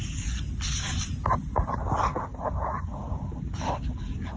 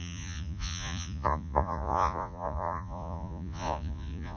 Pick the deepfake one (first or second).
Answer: second